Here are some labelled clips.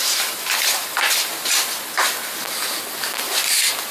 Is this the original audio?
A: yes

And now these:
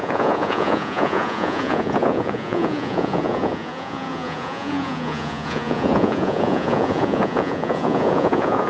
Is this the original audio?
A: no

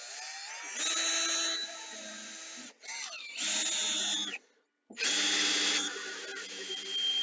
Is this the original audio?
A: yes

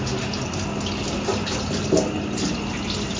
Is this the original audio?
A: yes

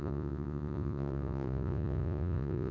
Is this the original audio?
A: no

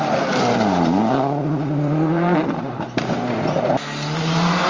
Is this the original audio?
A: yes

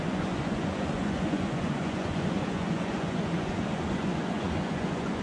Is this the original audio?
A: no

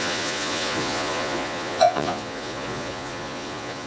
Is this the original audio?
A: no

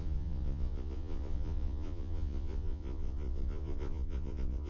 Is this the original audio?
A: no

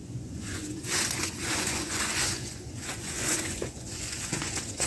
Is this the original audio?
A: no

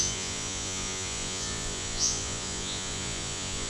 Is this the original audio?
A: no